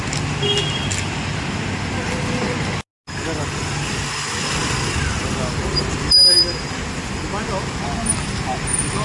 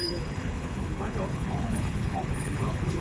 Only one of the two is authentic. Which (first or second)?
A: first